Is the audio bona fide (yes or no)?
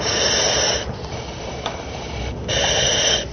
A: yes